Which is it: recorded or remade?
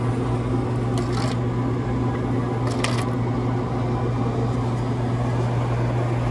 recorded